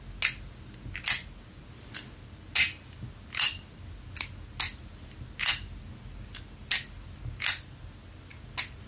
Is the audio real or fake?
real